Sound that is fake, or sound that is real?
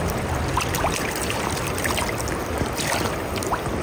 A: fake